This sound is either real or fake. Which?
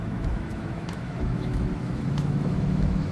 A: fake